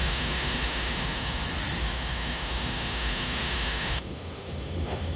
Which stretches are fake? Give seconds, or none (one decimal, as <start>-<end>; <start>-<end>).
0.0-1.4; 1.8-5.2